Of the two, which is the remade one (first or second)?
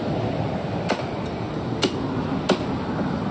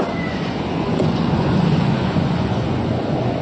second